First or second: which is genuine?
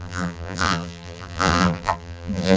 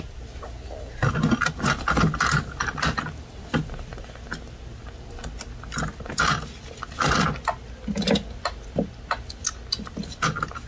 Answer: second